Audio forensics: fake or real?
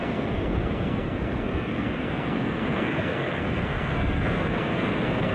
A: fake